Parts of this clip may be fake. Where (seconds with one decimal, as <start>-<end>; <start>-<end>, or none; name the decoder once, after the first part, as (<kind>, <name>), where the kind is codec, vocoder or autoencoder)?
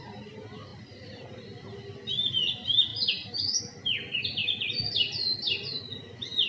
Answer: none